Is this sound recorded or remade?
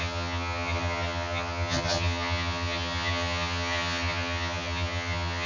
remade